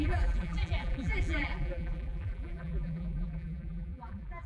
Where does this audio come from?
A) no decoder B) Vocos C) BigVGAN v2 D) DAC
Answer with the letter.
C